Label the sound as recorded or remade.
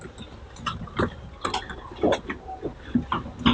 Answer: recorded